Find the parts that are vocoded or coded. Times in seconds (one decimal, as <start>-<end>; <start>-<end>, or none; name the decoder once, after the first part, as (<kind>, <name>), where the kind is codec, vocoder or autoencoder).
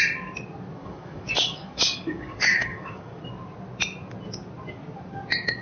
0.8-3.2 (codec, DAC)